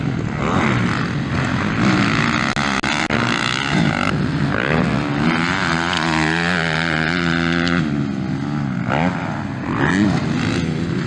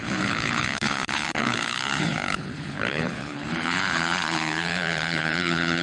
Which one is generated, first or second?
second